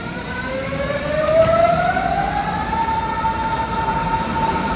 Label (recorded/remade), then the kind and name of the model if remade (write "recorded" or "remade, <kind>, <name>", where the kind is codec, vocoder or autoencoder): remade, vocoder, BigVGAN v2